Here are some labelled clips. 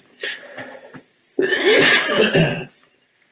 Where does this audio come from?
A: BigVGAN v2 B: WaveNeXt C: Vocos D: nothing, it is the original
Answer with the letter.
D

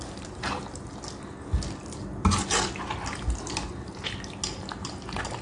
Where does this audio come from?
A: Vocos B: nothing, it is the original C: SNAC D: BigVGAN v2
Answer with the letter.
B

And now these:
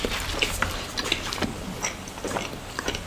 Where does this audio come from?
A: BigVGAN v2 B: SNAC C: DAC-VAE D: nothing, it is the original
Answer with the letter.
D